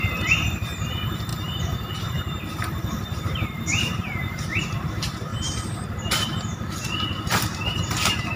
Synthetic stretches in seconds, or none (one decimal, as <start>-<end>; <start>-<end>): 0.0-8.4